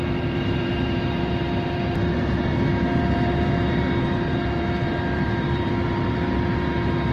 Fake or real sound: fake